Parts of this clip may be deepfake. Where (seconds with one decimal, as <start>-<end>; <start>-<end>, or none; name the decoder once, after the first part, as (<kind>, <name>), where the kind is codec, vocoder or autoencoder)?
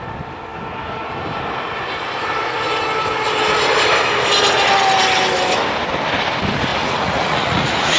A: 6.7-8.0 (vocoder, Vocos)